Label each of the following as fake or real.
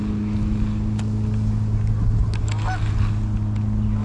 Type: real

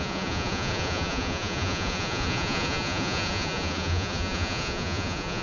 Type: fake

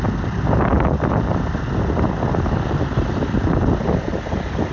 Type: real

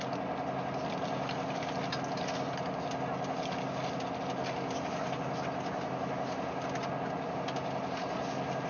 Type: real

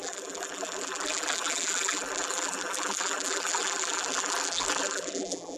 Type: fake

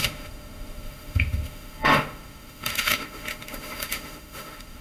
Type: fake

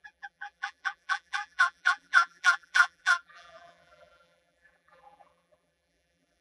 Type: fake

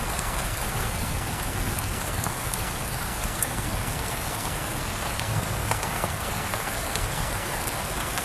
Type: fake